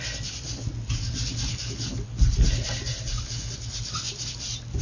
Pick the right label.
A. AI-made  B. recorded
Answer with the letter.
B